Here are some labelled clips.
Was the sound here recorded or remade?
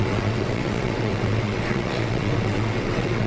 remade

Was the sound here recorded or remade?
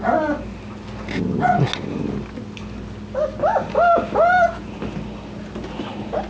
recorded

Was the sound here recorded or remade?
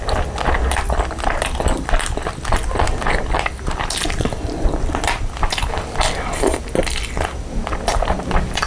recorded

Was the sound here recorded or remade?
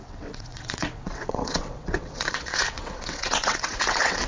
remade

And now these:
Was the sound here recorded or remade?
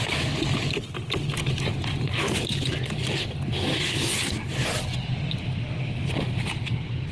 recorded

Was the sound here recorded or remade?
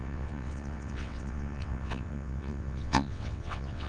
remade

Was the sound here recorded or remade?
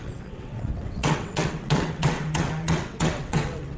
remade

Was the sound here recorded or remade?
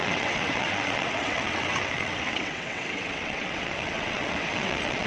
remade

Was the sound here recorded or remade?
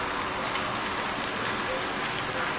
recorded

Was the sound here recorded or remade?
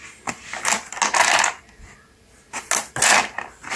recorded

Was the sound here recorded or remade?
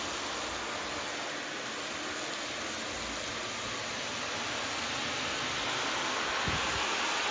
recorded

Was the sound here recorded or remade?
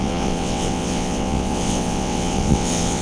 remade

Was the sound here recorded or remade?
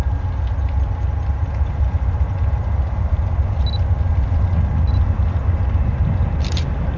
recorded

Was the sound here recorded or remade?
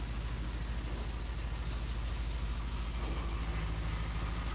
recorded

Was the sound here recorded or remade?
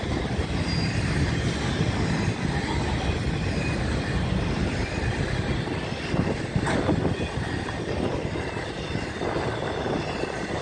recorded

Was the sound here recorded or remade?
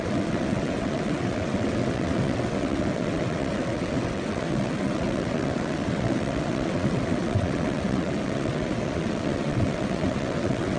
remade